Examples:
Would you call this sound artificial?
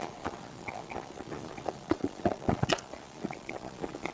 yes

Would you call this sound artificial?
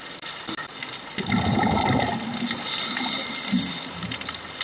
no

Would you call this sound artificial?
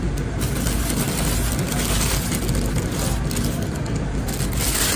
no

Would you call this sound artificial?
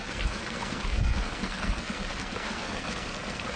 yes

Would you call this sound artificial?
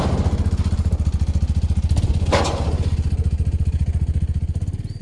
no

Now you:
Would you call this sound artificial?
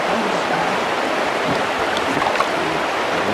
no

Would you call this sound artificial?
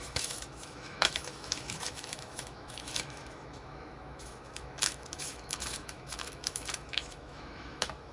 yes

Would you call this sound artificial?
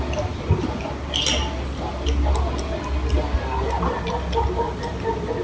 no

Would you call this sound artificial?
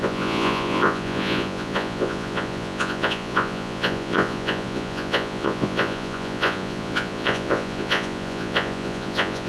yes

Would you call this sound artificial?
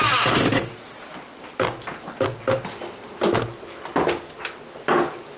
no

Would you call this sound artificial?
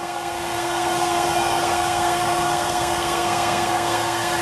yes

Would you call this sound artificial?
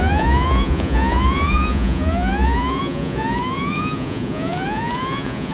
yes